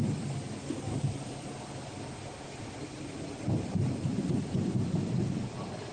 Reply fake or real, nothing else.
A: real